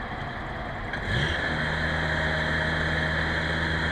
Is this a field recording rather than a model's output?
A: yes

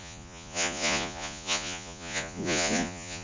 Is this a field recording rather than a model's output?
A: no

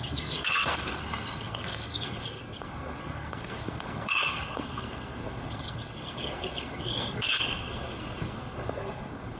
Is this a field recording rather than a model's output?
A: no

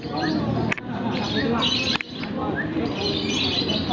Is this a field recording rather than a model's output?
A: yes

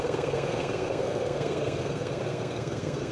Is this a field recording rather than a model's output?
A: no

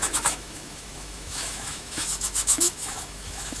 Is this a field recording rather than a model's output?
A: no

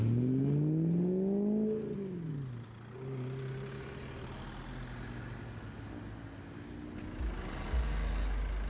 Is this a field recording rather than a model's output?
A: yes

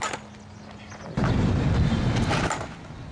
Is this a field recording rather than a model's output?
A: yes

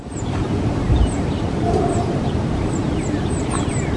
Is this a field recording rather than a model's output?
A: no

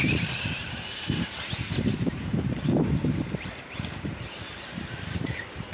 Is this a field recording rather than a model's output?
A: no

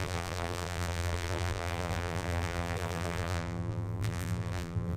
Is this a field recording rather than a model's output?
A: no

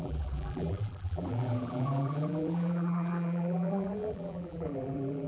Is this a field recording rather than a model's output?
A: no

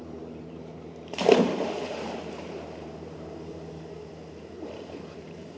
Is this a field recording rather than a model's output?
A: no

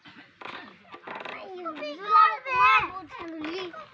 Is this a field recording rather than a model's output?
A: yes